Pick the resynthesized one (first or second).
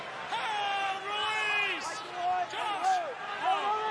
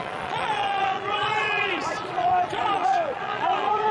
second